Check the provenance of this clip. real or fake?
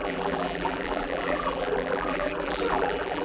fake